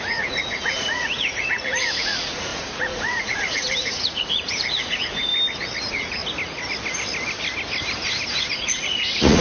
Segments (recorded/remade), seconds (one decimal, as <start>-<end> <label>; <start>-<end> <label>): 0.0-5.3 remade; 5.3-5.8 recorded; 5.8-6.2 remade; 6.2-8.4 recorded; 8.4-9.4 remade